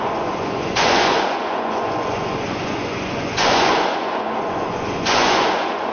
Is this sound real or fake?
fake